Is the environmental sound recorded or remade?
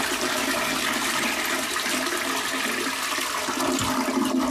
recorded